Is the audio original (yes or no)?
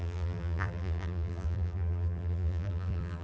no